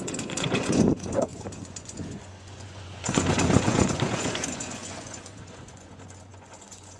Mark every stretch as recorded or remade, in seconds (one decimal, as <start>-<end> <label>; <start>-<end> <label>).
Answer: 0.0-7.0 remade